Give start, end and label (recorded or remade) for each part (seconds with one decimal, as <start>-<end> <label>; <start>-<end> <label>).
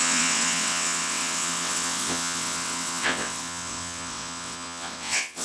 0.0-5.4 remade